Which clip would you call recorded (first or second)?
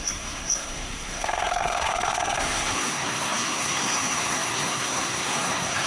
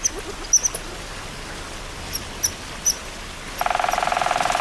second